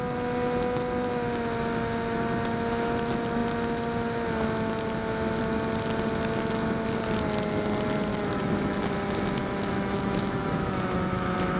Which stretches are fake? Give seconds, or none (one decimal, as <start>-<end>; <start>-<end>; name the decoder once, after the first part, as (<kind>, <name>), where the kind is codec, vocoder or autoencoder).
8.1-8.8 (autoencoder, DAC-VAE); 9.4-11.6